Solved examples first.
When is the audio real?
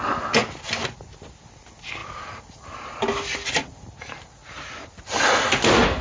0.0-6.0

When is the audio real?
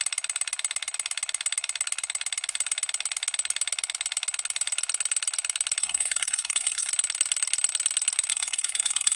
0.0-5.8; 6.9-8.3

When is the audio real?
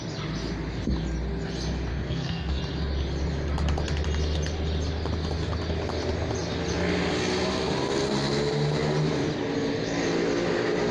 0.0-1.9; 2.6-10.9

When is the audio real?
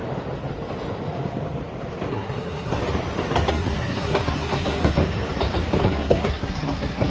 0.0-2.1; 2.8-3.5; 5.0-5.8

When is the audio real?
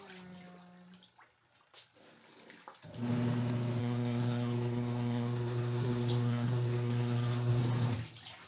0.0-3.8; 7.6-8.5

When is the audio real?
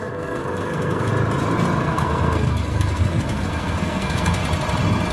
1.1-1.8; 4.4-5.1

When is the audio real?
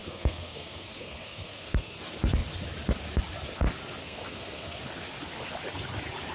2.0-4.0; 4.8-6.3